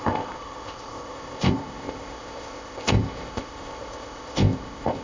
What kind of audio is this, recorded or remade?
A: remade